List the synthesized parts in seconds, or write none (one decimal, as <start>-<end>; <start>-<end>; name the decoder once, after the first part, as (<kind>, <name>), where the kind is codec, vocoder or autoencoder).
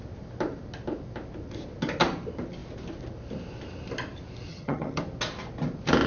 4.5-5.0 (vocoder, HiFi-GAN)